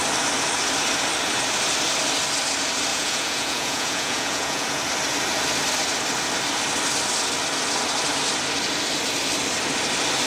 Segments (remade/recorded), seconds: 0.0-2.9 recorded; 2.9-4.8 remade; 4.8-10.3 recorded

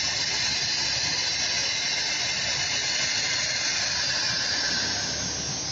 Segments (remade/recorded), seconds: 0.0-5.7 recorded

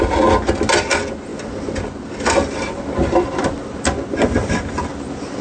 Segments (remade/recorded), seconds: 0.0-5.4 recorded

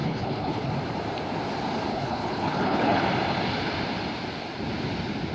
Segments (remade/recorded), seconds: 0.0-0.7 remade; 0.7-1.9 recorded; 1.9-3.0 remade; 3.0-5.3 recorded

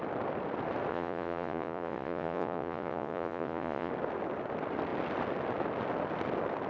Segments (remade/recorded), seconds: 0.0-0.9 recorded; 0.9-3.9 remade; 3.9-6.7 recorded